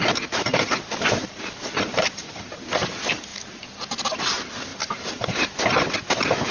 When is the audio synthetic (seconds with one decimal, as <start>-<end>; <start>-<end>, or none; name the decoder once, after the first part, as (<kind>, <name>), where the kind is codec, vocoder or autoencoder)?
0.5-2.6 (vocoder, BigVGAN v2); 4.7-5.5

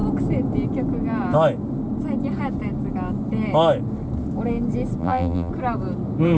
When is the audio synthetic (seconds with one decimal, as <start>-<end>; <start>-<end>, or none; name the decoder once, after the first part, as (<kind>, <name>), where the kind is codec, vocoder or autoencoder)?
5.0-5.5 (vocoder, BigVGAN v2)

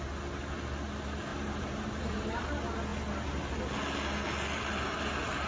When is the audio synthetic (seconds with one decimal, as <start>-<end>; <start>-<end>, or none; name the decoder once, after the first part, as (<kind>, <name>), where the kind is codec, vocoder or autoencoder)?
1.3-2.5 (vocoder, BigVGAN v2)

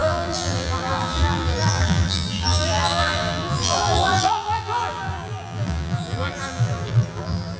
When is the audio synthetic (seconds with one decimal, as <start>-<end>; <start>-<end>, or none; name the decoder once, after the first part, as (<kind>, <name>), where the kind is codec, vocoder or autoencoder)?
0.0-7.6 (vocoder, BigVGAN v2)

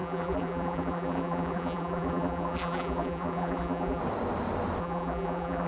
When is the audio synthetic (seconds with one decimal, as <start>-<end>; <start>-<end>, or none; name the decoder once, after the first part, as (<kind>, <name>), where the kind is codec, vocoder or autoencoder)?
0.0-4.0 (vocoder, BigVGAN v2); 4.8-5.7

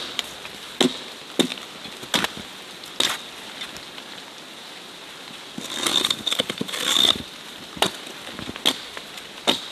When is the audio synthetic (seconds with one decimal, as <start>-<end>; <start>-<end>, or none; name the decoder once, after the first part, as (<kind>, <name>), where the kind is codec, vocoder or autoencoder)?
5.9-7.9 (vocoder, BigVGAN v2)

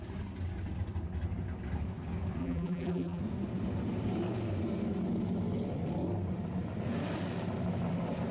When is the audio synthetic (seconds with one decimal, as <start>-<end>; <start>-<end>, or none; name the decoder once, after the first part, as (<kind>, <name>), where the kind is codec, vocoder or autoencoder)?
2.4-3.2 (vocoder, BigVGAN v2)